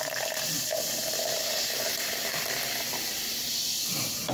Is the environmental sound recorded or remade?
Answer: remade